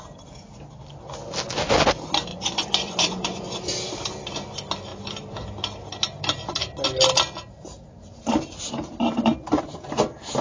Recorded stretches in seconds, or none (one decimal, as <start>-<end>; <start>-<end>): 0.0-2.3; 3.4-10.4